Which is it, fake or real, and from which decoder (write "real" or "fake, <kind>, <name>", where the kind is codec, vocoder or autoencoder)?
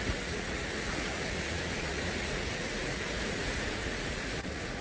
fake, vocoder, Vocos